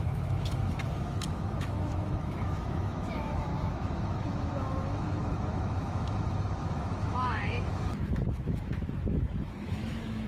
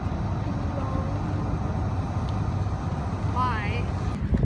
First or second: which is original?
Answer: second